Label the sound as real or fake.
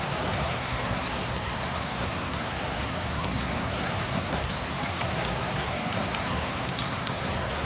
fake